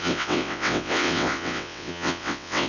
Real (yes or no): no